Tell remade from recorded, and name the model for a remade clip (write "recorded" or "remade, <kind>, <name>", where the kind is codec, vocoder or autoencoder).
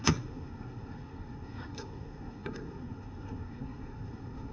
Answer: remade, codec, SNAC